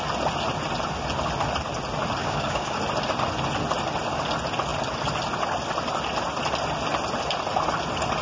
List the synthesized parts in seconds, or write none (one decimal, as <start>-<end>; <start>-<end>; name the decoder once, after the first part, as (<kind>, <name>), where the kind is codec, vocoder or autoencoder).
2.2-2.8 (codec, DAC)